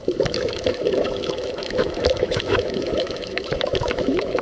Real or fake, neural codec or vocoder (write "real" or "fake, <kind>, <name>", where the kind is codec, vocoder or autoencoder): fake, autoencoder, DAC-VAE